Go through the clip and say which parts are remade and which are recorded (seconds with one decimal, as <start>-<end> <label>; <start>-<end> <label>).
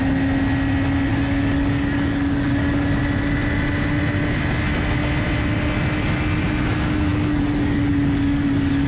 0.0-1.1 recorded; 1.1-3.0 remade; 3.0-7.1 recorded; 7.1-8.9 remade